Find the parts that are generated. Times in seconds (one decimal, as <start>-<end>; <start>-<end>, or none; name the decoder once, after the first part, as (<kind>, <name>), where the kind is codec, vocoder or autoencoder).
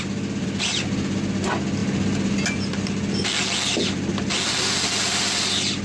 none